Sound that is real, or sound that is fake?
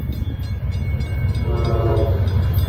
real